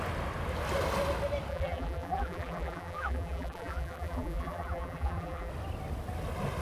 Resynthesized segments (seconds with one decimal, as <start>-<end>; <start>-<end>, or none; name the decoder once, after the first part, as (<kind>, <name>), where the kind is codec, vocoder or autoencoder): 1.5-5.5 (vocoder, BigVGAN v2)